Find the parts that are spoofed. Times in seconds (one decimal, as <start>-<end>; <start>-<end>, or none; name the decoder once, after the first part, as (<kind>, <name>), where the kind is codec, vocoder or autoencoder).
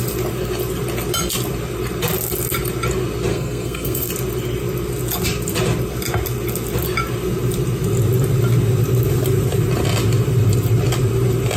3.3-4.1 (codec, SNAC)